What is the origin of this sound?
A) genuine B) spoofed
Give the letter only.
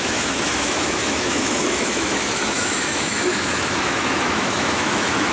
B